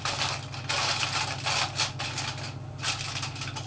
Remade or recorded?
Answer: recorded